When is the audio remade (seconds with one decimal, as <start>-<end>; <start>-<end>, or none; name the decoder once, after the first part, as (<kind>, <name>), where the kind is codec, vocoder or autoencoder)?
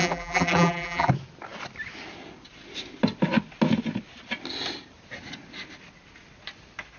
0.0-1.1 (vocoder, BigVGAN v2)